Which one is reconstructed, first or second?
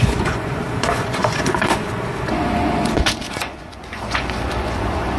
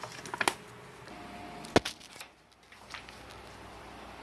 first